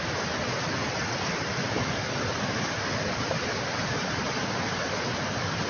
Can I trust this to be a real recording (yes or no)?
yes